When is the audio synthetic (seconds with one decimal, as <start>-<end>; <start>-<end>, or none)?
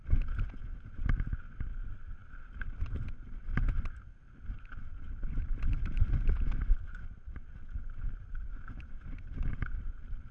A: none